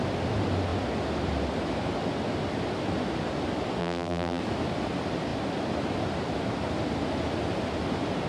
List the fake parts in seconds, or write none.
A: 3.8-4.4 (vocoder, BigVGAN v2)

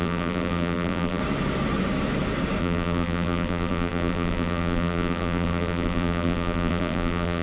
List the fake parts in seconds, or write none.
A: 0.0-1.2 (vocoder, BigVGAN v2); 2.6-7.4

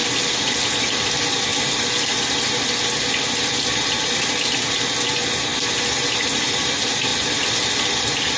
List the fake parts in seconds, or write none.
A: 0.7-1.5 (vocoder, BigVGAN v2); 6.2-8.4

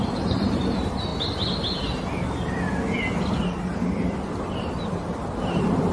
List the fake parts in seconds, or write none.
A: 0.0-1.1 (vocoder, BigVGAN v2); 4.6-5.9

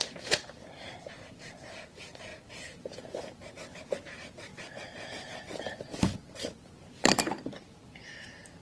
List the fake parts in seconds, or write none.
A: 0.0-4.5 (vocoder, BigVGAN v2); 5.4-8.6

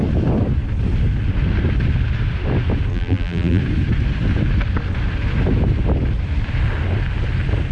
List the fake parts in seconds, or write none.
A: 2.9-3.6 (vocoder, BigVGAN v2)